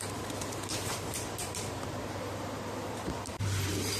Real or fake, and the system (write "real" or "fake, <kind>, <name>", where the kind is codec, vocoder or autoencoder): fake, vocoder, BigVGAN v2